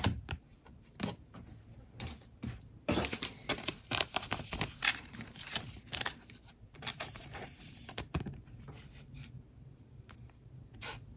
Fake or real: fake